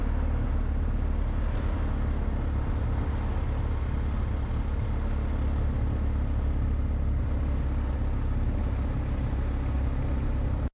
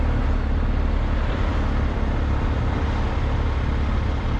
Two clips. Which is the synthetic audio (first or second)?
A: second